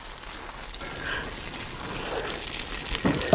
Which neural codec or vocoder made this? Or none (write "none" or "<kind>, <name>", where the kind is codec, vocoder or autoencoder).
none